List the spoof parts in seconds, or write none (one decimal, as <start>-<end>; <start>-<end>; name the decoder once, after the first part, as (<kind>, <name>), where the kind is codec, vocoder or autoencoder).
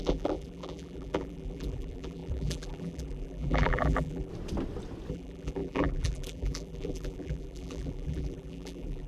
0.0-4.3 (vocoder, BigVGAN v2); 5.1-9.1